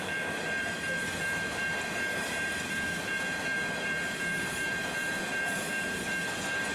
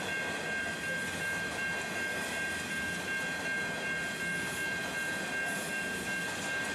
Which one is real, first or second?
second